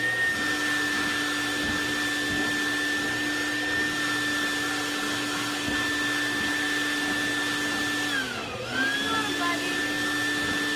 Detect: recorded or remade recorded